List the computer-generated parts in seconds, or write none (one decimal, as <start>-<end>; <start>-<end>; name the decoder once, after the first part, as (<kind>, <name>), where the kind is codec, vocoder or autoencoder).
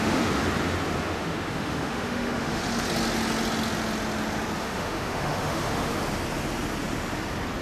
0.0-0.4 (autoencoder, DAC-VAE); 1.1-2.6; 4.6-5.9